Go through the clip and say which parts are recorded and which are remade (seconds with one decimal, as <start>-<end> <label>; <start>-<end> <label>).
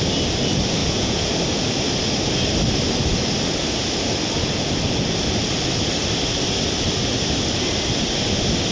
0.0-0.8 recorded; 0.8-1.3 remade; 1.3-8.7 recorded